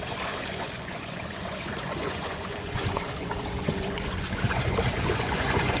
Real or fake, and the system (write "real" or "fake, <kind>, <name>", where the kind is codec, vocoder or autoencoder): fake, vocoder, Vocos